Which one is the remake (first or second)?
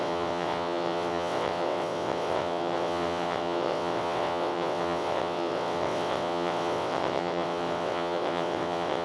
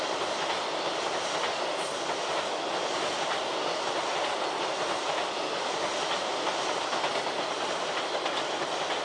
first